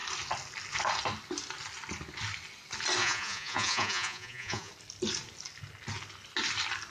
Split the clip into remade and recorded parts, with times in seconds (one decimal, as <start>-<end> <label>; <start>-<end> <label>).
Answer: 0.0-3.0 recorded; 3.0-4.7 remade; 4.7-6.9 recorded